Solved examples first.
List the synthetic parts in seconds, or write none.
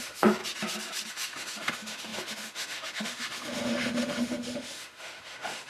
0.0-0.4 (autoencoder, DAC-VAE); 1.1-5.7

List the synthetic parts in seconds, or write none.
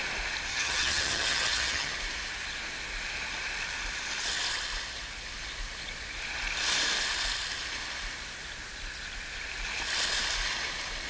0.5-1.9 (vocoder, HiFi-GAN)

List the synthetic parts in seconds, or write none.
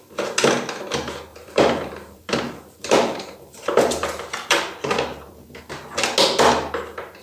1.3-5.6 (vocoder, BigVGAN v2)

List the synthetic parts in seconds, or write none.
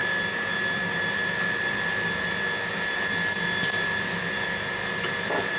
none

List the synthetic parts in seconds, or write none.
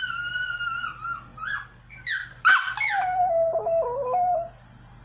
none